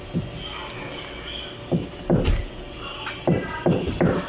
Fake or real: real